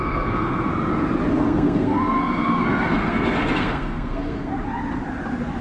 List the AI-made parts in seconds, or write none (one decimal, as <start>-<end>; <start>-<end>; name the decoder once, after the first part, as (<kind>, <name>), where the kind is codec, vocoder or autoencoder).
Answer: 0.0-0.7 (codec, SNAC); 1.3-4.5